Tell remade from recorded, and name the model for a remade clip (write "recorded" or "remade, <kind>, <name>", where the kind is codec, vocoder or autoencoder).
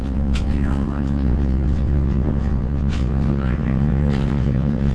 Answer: remade, vocoder, WaveNeXt